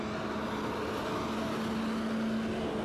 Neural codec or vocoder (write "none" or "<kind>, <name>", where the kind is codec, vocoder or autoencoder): none